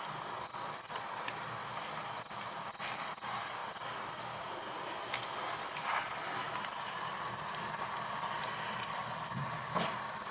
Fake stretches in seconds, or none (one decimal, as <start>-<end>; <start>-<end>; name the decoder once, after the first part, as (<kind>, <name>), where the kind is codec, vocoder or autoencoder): none